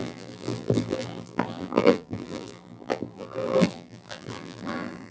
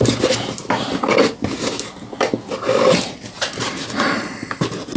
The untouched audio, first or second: second